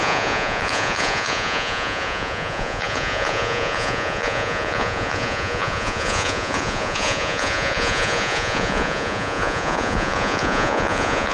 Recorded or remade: remade